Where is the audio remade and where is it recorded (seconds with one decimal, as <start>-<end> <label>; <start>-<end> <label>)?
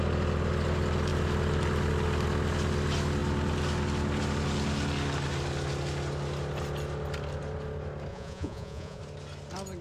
0.0-8.1 recorded; 8.1-9.0 remade; 9.0-9.8 recorded